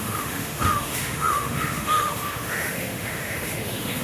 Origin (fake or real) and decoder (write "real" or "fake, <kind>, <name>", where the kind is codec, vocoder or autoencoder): fake, autoencoder, DAC-VAE